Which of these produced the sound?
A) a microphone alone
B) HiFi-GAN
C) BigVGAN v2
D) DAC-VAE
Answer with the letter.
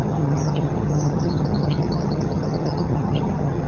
B